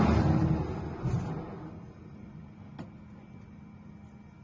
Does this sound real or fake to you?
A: real